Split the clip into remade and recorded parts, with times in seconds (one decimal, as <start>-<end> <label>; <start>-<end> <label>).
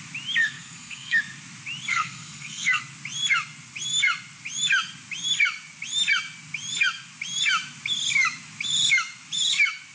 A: 0.0-0.4 recorded; 0.4-1.2 remade; 1.2-1.9 recorded; 1.9-2.8 remade; 2.8-9.9 recorded